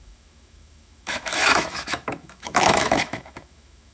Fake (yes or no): yes